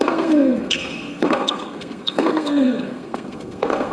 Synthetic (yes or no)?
yes